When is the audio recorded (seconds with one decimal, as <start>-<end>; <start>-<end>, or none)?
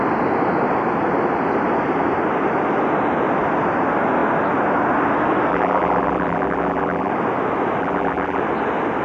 0.0-5.5; 7.1-7.8; 8.4-9.0